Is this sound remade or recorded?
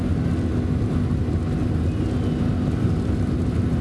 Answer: recorded